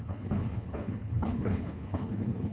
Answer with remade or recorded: remade